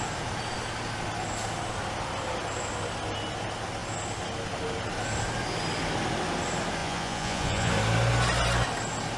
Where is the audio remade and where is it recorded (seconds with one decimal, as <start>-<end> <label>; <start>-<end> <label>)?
0.0-6.8 recorded; 6.8-7.7 remade; 7.7-9.2 recorded